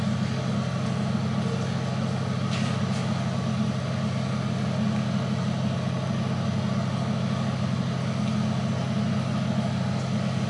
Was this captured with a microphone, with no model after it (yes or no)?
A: yes